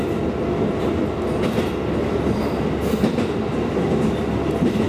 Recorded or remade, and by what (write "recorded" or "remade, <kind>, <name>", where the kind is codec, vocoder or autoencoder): recorded